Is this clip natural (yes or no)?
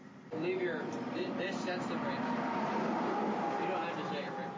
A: yes